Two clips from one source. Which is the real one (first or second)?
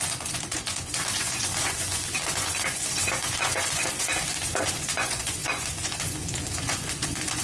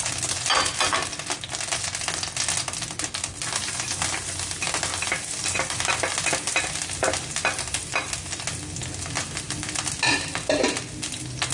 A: second